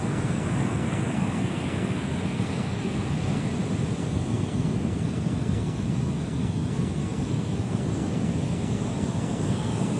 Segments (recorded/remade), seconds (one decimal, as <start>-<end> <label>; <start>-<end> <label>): 0.0-3.5 remade; 3.5-4.0 recorded; 4.0-10.0 remade

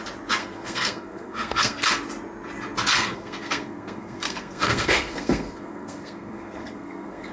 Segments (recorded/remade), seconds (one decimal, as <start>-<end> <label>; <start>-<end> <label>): 0.0-0.4 recorded; 0.4-1.9 remade; 1.9-2.9 recorded; 2.9-7.3 remade

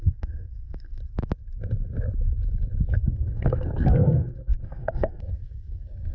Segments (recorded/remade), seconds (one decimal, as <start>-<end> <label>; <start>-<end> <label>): 0.0-1.0 remade; 1.0-2.9 recorded; 2.9-6.1 remade

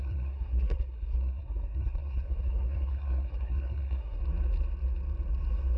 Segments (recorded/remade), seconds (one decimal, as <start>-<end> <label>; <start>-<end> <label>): 0.0-4.2 remade; 4.2-5.8 recorded

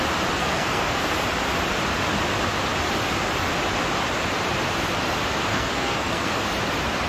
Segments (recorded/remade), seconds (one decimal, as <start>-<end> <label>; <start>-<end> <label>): 0.0-0.4 recorded; 0.4-1.0 remade; 1.0-5.5 recorded; 5.5-6.3 remade; 6.3-7.1 recorded

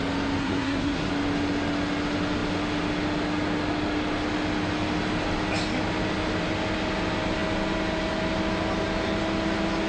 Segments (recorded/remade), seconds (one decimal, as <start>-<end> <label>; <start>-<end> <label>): 0.0-0.4 recorded; 0.4-1.1 remade; 1.1-9.9 recorded

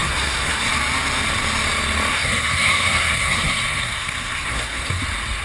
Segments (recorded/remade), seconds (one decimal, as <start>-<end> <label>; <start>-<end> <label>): 0.0-0.7 remade; 0.7-2.1 recorded; 2.1-5.0 remade; 5.0-5.4 recorded

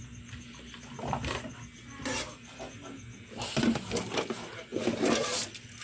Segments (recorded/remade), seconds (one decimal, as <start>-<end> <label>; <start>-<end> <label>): 0.0-5.8 recorded